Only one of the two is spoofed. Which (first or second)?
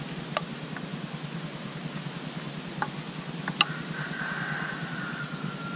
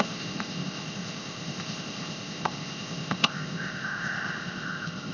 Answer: second